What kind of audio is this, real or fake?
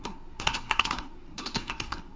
fake